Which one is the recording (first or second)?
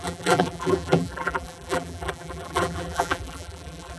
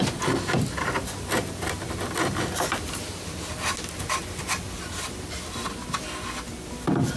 second